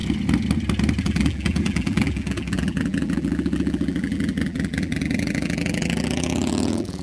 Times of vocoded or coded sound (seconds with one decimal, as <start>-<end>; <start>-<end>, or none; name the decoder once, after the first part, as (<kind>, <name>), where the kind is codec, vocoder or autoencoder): 1.0-7.0 (vocoder, BigVGAN v2)